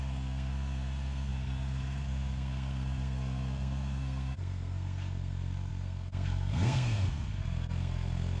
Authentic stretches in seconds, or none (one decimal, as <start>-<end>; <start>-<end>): none